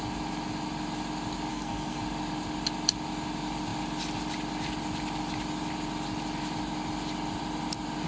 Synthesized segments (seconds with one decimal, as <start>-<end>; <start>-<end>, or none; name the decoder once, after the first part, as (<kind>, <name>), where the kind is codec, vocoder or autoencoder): 1.5-2.0 (codec, SNAC)